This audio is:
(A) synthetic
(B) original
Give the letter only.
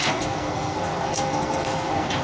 A